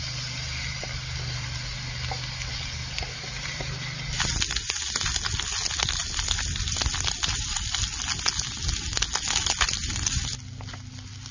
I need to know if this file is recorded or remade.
recorded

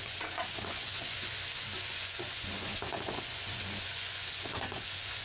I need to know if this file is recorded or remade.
remade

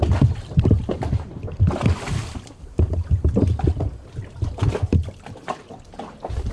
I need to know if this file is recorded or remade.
recorded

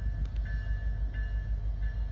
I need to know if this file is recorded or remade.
recorded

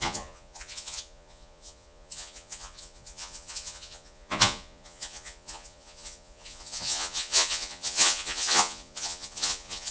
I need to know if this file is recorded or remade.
remade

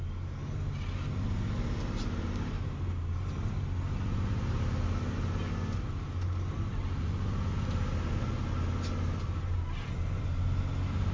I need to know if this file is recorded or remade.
recorded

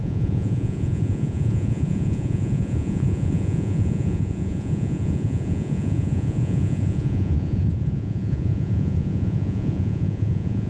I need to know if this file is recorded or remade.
remade